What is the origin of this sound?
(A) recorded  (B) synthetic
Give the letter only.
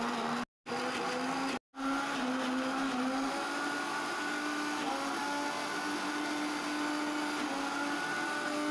A